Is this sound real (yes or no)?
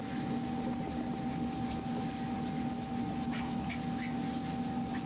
yes